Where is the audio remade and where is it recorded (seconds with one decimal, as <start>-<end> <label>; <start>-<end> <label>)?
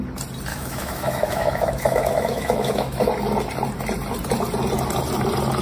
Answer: 0.0-0.5 recorded; 0.5-3.1 remade; 3.1-5.6 recorded